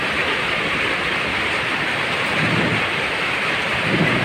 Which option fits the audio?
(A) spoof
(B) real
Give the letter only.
B